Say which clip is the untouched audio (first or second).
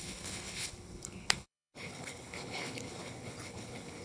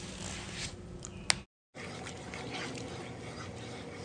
second